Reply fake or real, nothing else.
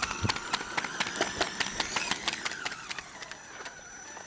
real